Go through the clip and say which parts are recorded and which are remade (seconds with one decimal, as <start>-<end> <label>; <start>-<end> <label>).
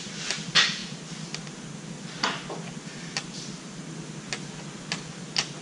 0.0-5.6 recorded